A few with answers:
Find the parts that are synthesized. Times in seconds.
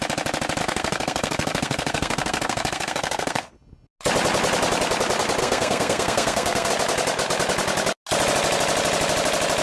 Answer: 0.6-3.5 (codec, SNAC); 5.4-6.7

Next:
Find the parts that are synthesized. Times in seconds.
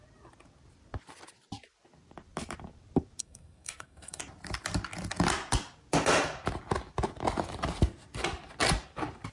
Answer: 3.2-4.2 (codec, SNAC)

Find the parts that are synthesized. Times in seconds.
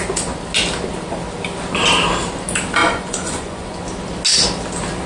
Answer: 2.8-3.8 (vocoder, Vocos)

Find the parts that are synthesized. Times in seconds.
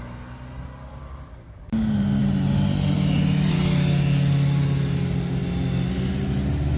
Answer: none